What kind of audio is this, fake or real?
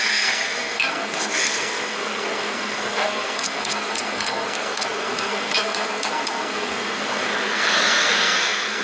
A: fake